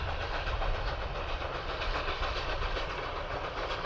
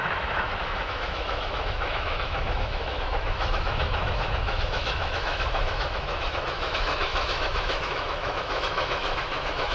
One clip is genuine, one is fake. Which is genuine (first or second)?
first